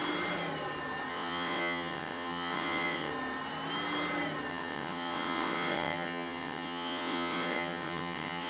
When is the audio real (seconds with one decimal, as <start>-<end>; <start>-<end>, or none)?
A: 0.0-1.1; 3.1-4.5